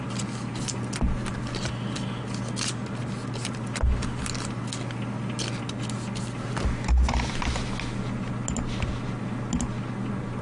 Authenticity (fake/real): real